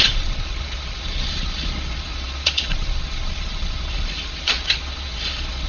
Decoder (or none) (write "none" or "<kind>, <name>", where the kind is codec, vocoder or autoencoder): vocoder, Vocos